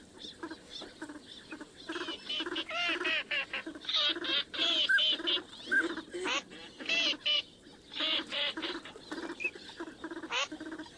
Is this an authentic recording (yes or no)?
yes